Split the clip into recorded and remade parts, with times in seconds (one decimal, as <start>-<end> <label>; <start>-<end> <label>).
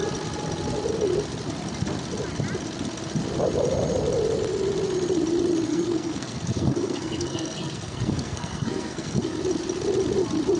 0.0-5.7 recorded; 5.7-9.4 remade; 9.4-10.6 recorded